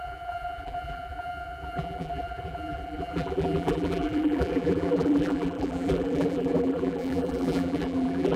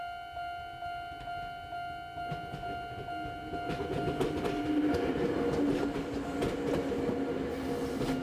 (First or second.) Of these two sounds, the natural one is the second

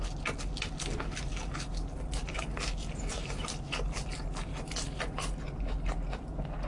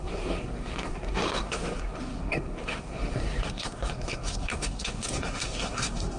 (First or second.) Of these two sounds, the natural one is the first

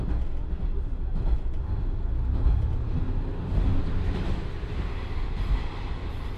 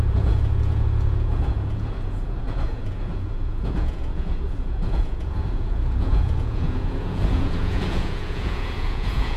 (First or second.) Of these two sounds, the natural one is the first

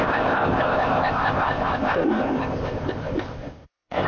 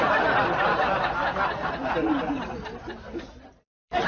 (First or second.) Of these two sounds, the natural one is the second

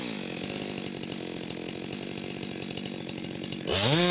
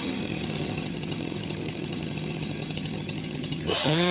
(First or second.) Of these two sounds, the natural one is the first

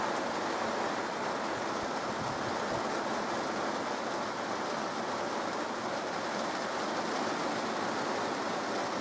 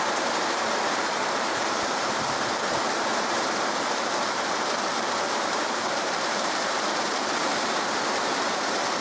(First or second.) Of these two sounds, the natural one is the first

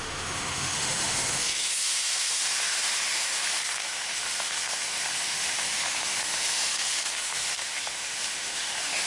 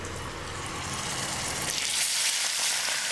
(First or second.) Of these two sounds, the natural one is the second